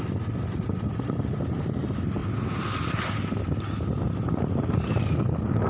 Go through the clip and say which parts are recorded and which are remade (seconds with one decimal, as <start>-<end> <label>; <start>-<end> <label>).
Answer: 0.0-5.7 recorded

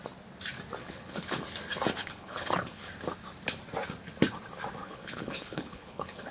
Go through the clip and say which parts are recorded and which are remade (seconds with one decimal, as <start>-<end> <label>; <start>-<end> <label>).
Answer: 0.0-0.8 recorded; 0.8-1.4 remade; 1.4-2.0 recorded; 2.0-2.9 remade; 2.9-4.8 recorded; 4.8-6.3 remade

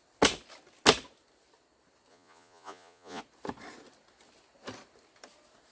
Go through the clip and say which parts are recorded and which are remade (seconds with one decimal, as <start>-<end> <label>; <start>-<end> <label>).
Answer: 0.0-2.1 recorded; 2.1-3.2 remade; 3.2-5.7 recorded

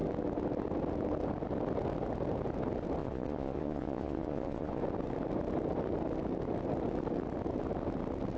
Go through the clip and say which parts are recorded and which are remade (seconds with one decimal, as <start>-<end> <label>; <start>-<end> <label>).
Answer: 0.0-3.0 recorded; 3.0-4.8 remade; 4.8-8.4 recorded

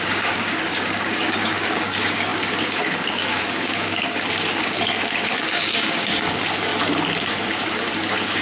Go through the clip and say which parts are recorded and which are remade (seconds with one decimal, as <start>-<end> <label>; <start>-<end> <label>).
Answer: 0.0-6.7 remade; 6.7-7.5 recorded; 7.5-8.4 remade

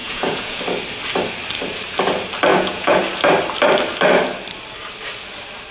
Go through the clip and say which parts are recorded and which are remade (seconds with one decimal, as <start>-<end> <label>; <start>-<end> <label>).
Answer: 0.0-0.6 remade; 0.6-2.5 recorded; 2.5-3.0 remade; 3.0-5.7 recorded

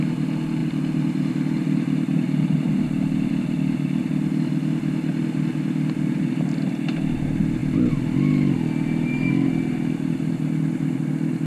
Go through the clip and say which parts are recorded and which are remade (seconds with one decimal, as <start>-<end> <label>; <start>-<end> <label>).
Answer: 0.0-11.5 recorded